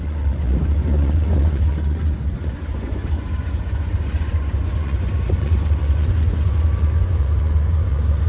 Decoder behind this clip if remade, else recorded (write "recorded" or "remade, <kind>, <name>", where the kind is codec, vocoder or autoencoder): remade, vocoder, Vocos